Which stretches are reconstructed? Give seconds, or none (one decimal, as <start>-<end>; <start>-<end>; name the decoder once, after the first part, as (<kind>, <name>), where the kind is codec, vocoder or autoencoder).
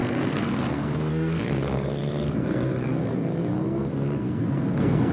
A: 0.0-5.1 (codec, SNAC)